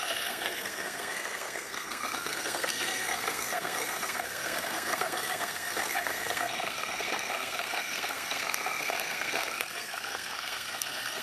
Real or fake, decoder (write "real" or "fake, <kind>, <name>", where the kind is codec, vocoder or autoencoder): fake, codec, SNAC